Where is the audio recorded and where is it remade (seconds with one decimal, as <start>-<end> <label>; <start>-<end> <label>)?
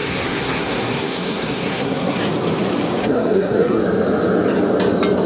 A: 0.0-2.2 remade; 2.2-3.0 recorded; 3.0-3.8 remade; 3.8-5.3 recorded